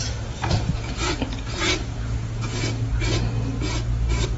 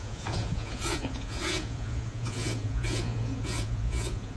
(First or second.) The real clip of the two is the first